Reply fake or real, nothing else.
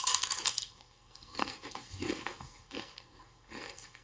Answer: fake